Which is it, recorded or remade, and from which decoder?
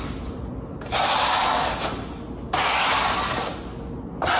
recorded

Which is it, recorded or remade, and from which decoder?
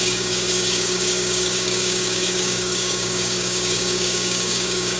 remade, codec, DAC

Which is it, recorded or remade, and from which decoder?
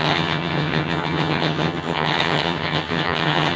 remade, vocoder, HiFi-GAN